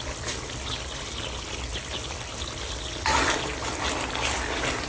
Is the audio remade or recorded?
recorded